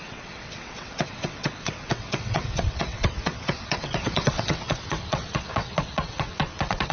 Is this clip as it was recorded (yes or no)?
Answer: no